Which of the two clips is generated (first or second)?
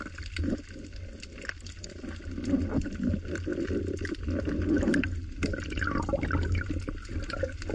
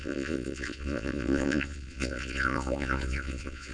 second